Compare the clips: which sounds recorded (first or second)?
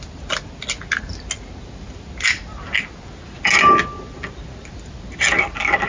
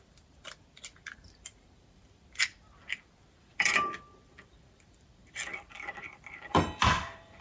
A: first